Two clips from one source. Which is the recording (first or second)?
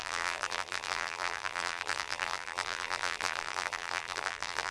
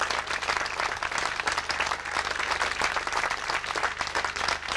second